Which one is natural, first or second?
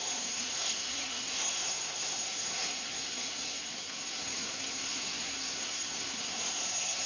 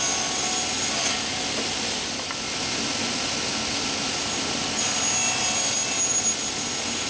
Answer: second